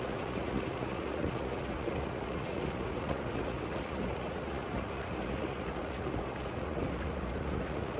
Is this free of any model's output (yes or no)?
no